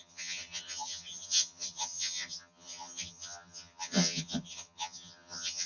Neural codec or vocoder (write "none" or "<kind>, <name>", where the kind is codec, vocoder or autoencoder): vocoder, HiFi-GAN